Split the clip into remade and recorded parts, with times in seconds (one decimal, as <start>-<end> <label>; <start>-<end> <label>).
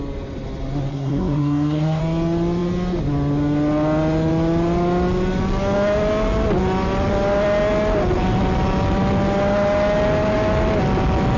0.0-0.9 recorded; 0.9-2.0 remade; 2.0-11.4 recorded